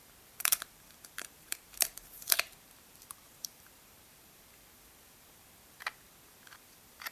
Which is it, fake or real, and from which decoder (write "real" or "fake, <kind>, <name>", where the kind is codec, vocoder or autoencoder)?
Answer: fake, vocoder, BigVGAN v2